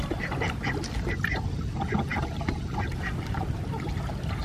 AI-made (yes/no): no